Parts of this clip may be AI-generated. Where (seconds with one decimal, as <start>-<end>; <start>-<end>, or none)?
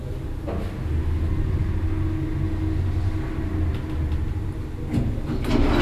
none